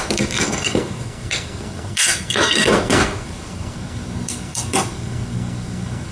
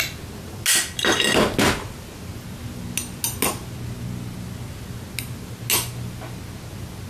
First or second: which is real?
second